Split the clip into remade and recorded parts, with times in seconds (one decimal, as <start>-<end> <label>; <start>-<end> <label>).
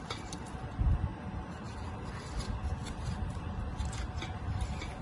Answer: 0.0-1.1 remade; 1.1-2.9 recorded; 2.9-5.0 remade